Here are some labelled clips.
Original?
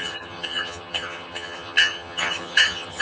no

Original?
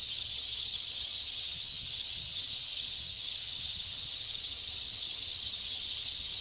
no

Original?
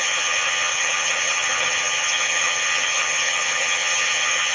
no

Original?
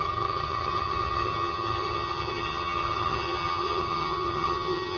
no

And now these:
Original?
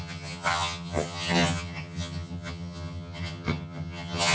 no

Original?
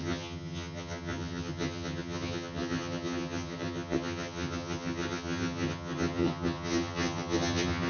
no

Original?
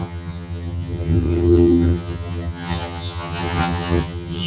no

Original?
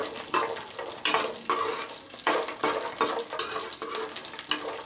yes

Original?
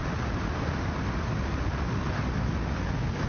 yes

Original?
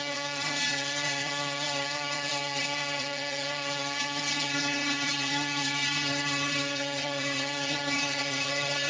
no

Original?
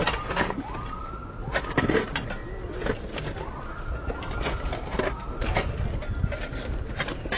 yes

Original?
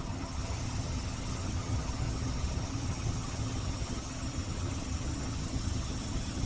no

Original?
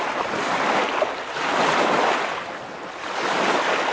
yes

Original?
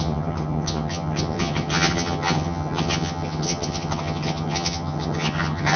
no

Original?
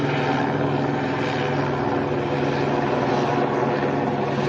yes